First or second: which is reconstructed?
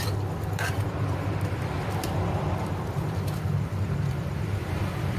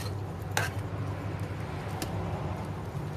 first